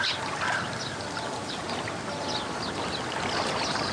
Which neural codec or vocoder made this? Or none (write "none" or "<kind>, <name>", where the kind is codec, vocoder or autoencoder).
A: none